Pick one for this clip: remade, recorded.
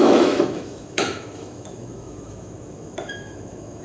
remade